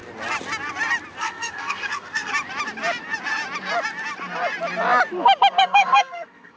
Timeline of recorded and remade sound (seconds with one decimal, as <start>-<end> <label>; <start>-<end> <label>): 0.0-1.2 recorded; 1.2-2.3 remade; 2.3-5.6 recorded; 5.6-6.6 remade